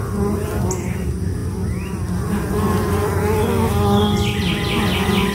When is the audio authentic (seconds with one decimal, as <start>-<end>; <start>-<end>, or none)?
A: 0.0-5.3